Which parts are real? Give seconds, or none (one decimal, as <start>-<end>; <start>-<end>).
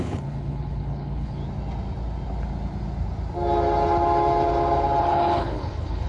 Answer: 1.4-5.0